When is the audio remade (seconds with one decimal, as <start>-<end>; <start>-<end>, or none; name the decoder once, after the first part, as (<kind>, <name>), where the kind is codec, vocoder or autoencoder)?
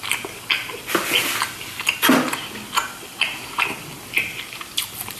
none